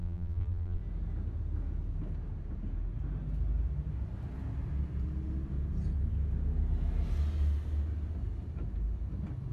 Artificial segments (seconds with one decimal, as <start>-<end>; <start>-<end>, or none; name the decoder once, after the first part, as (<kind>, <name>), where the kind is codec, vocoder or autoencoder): 0.0-0.8 (vocoder, BigVGAN v2)